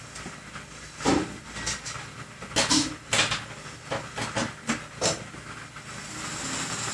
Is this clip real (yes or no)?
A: yes